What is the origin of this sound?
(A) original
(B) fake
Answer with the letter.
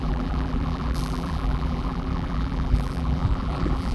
B